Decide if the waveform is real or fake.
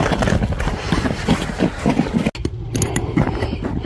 real